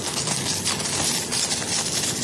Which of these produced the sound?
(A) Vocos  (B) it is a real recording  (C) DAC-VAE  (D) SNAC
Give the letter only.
B